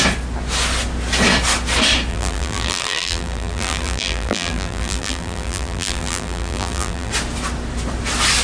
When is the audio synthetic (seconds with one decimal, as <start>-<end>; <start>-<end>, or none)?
2.1-7.1